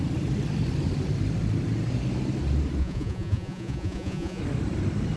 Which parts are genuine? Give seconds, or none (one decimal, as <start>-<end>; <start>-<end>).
0.0-2.8; 4.4-5.2